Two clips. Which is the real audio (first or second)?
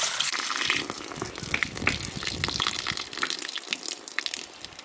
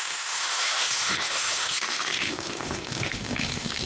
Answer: first